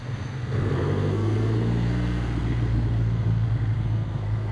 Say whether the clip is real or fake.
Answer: fake